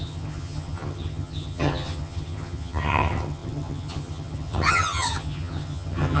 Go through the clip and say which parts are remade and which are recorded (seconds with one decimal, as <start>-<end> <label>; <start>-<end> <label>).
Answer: 0.0-6.2 remade